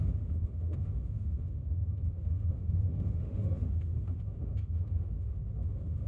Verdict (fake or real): fake